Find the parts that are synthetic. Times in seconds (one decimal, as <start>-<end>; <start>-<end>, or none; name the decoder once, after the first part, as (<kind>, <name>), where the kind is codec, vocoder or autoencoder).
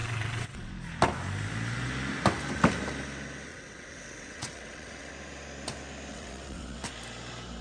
0.0-0.7 (vocoder, WaveNeXt); 3.5-5.1; 6.1-6.9